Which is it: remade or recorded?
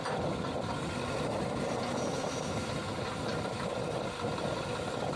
recorded